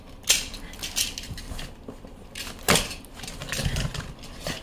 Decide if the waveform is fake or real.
real